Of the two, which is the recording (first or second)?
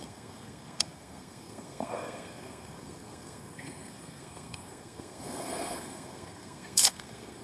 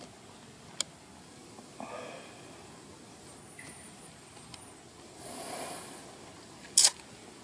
second